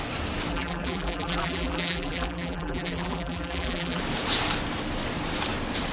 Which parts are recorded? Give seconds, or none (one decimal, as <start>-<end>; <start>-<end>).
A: 0.0-0.5; 4.0-5.9